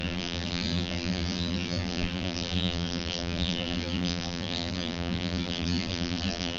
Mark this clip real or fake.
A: fake